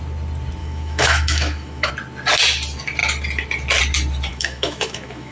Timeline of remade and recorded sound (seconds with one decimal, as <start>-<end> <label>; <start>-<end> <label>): 0.0-0.6 recorded; 0.6-1.9 remade; 1.9-4.3 recorded; 4.3-5.3 remade